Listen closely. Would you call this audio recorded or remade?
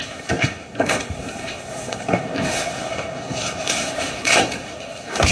remade